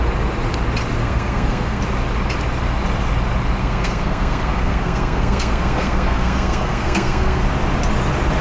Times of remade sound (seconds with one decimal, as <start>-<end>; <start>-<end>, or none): 1.0-1.8; 3.6-7.4